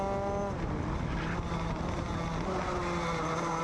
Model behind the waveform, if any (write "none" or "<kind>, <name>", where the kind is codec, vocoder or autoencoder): none